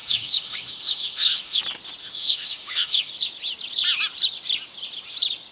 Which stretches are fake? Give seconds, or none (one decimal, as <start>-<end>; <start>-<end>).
0.0-1.6; 2.0-3.1